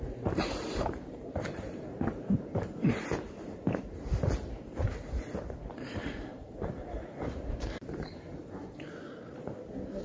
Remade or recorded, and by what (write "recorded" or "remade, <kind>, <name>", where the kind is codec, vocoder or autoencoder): remade, vocoder, BigVGAN v2